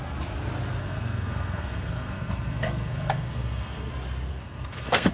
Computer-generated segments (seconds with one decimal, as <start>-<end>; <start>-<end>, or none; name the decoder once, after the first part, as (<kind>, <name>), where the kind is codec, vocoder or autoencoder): 0.8-3.9 (codec, SNAC); 4.3-5.1